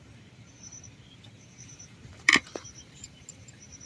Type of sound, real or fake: fake